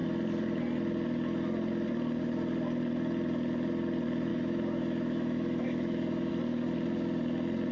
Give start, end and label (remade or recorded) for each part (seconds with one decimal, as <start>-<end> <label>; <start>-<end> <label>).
0.0-4.3 recorded; 4.3-6.3 remade; 6.3-7.7 recorded